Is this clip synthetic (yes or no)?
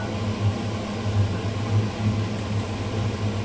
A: no